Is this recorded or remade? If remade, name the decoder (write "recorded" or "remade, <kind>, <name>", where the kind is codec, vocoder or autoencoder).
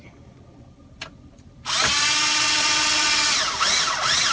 remade, vocoder, BigVGAN v2